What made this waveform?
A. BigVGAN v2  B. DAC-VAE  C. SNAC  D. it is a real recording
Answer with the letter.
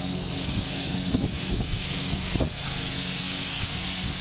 C